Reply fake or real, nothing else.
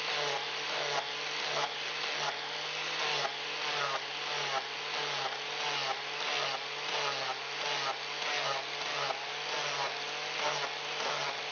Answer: real